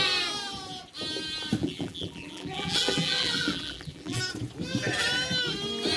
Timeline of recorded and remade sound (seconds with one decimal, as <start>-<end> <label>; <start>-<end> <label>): 0.0-1.6 recorded; 1.6-4.2 remade; 4.2-6.0 recorded